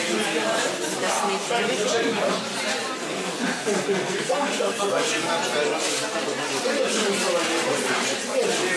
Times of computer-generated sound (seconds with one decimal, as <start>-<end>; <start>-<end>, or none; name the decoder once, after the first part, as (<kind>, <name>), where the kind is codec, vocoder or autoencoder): 3.0-5.1 (codec, SNAC)